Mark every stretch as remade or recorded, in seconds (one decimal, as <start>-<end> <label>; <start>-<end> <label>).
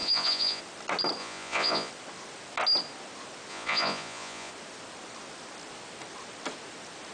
0.0-0.6 remade; 0.6-1.2 recorded; 1.2-1.9 remade; 1.9-3.5 recorded; 3.5-4.5 remade; 4.5-7.1 recorded